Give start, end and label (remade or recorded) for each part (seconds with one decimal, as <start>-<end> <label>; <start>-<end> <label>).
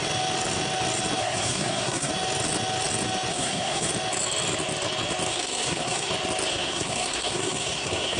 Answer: 0.0-1.2 recorded; 1.2-2.1 remade; 2.1-3.3 recorded; 3.3-3.9 remade; 3.9-5.3 recorded; 5.3-6.1 remade; 6.1-6.5 recorded; 6.5-8.2 remade